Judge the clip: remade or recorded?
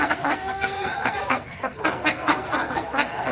remade